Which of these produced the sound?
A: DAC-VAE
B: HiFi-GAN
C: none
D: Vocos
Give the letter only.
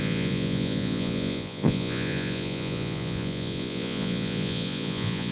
D